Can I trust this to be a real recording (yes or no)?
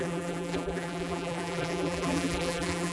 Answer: no